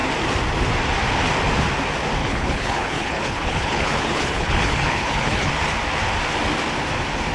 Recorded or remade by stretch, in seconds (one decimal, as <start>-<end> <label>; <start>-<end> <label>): 0.0-2.2 recorded; 2.2-5.5 remade; 5.5-7.3 recorded